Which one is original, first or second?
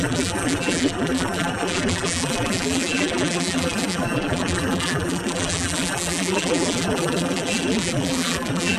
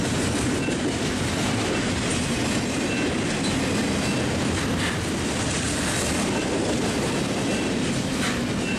second